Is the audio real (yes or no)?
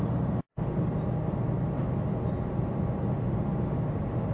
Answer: yes